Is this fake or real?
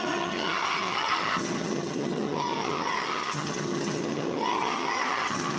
fake